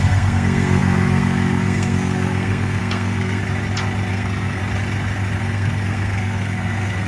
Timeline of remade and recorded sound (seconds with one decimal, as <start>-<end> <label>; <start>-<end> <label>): 0.0-3.4 remade; 3.4-4.1 recorded; 4.1-4.6 remade; 4.6-5.4 recorded; 5.4-7.1 remade